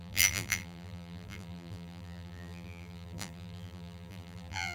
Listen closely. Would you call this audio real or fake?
fake